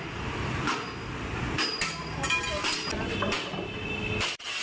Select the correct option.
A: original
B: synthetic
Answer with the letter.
A